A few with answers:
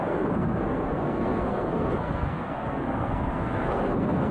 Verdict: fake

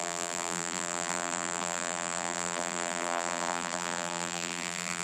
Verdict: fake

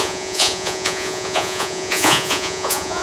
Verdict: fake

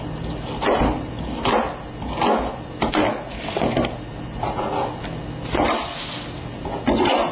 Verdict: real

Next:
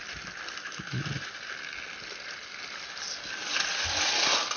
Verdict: real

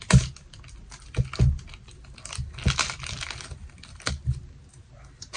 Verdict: real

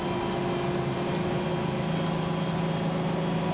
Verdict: real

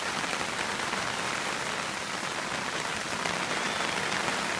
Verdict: fake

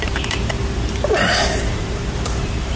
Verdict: fake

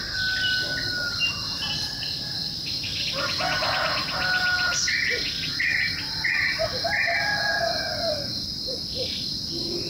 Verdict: real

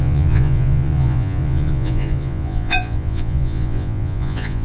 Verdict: fake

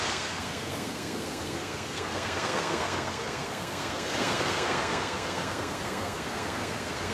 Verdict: fake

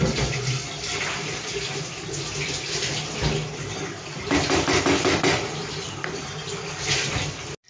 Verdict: real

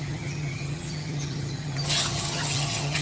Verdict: fake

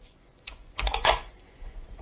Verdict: fake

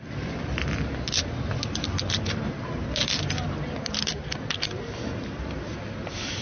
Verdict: real